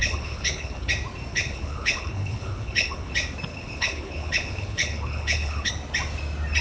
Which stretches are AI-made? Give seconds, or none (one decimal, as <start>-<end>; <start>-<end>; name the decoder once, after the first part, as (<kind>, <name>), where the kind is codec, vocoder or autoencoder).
0.0-0.9 (codec, HILCodec); 1.3-3.1; 3.5-5.7